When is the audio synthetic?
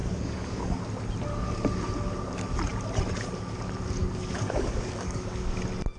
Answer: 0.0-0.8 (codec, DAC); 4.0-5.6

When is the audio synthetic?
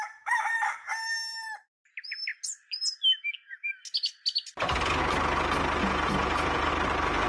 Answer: 5.8-6.7 (vocoder, Vocos)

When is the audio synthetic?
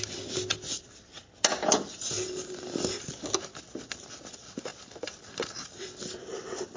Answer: none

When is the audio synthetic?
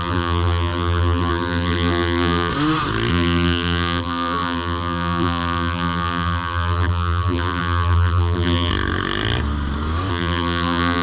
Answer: 0.0-2.5 (vocoder, BigVGAN v2); 3.1-8.7; 10.1-11.0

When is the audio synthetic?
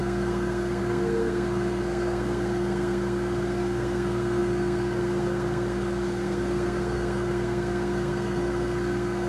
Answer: 0.0-9.3 (codec, SNAC)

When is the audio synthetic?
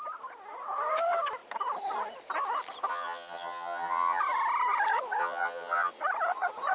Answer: 2.9-4.2 (vocoder, HiFi-GAN); 5.2-5.9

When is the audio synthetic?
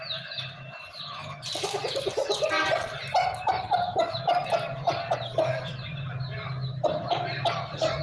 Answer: none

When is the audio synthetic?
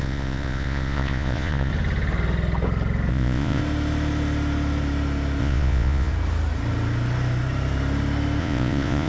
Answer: 0.0-1.7 (vocoder, Vocos); 3.1-3.6; 5.4-6.1; 8.4-9.1